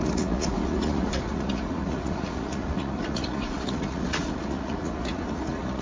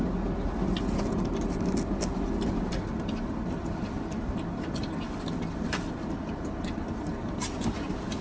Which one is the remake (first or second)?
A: first